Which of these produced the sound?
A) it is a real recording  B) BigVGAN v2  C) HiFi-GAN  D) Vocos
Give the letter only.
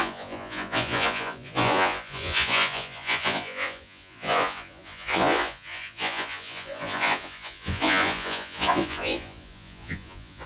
D